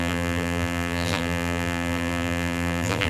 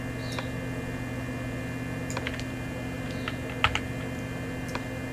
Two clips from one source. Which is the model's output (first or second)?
first